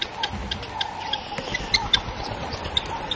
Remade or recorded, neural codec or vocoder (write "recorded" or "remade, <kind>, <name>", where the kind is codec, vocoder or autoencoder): recorded